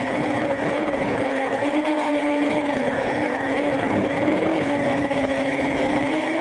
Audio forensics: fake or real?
fake